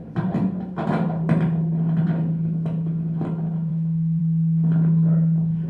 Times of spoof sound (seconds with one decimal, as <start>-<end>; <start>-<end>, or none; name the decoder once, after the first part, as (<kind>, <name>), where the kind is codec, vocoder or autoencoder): 3.7-4.2 (autoencoder, DAC-VAE)